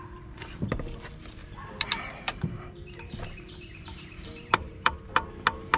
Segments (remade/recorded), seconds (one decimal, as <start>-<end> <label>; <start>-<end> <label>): 0.0-1.4 recorded; 1.4-4.9 remade; 4.9-5.8 recorded